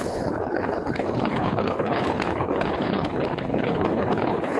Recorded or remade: remade